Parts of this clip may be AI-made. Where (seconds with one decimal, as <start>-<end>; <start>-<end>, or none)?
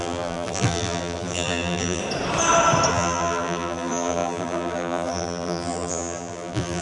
0.0-2.0; 2.9-6.8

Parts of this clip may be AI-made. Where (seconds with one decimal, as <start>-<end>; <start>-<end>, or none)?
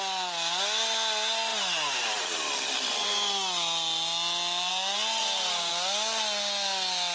5.2-5.7